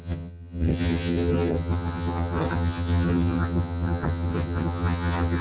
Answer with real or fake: fake